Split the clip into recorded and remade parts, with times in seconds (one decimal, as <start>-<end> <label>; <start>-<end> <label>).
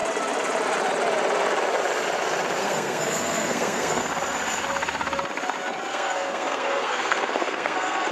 0.0-2.6 recorded; 2.6-4.0 remade; 4.0-5.9 recorded; 5.9-8.1 remade